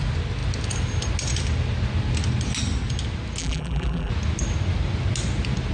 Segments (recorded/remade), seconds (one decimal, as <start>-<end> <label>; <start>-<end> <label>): 0.0-3.4 recorded; 3.4-4.1 remade; 4.1-5.7 recorded